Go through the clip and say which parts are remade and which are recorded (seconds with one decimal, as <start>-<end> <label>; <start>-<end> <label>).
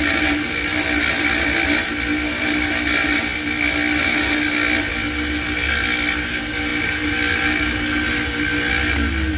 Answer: 0.0-9.4 recorded